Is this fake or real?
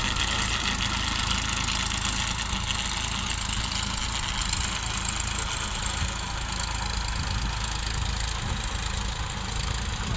real